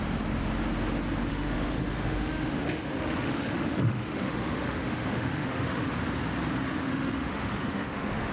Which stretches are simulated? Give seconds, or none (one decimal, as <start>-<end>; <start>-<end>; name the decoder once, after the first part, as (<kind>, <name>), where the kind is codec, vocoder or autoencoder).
1.3-5.9 (autoencoder, DAC-VAE); 6.9-8.3